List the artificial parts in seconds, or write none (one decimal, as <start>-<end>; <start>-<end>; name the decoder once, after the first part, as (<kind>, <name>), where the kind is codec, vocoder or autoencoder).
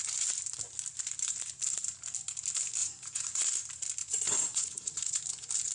2.8-3.4 (vocoder, Vocos); 4.0-5.2